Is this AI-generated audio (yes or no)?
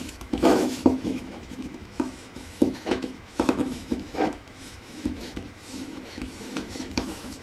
yes